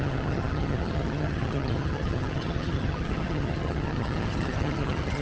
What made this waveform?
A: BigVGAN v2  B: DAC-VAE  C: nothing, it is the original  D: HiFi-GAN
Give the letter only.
D